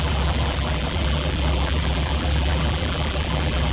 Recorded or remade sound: remade